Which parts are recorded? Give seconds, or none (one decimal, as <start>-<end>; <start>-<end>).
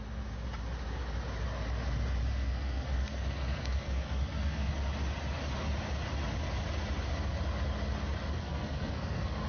0.0-2.3; 4.7-8.4